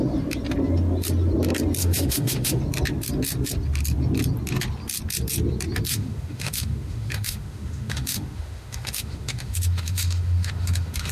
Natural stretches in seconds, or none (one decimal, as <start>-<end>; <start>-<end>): 0.0-1.8; 2.6-5.9